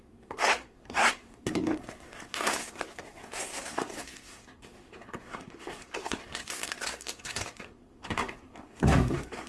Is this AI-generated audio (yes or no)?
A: yes